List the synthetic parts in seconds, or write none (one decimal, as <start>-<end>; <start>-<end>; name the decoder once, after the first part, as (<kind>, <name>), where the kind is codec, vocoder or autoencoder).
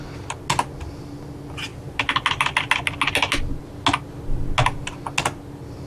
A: none